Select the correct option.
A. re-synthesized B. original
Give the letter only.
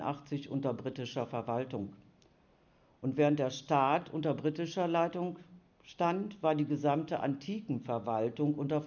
B